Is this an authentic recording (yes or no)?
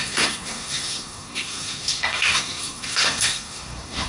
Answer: no